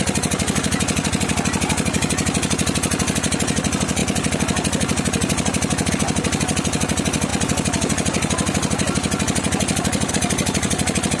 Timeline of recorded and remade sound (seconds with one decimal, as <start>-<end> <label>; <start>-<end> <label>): 0.0-11.2 recorded